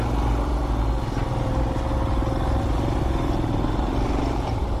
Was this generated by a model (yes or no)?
no